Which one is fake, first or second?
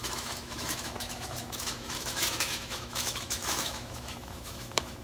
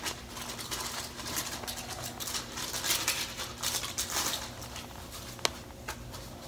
first